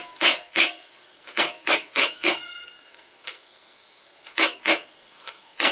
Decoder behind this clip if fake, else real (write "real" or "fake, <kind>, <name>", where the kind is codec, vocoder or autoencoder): fake, codec, SNAC